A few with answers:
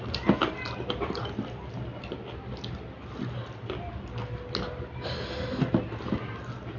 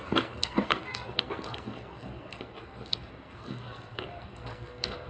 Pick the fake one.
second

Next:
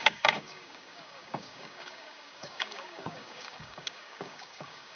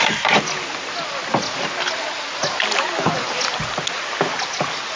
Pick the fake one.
first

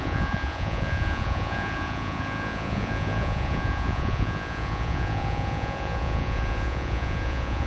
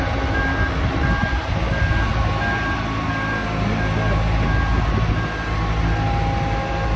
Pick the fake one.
first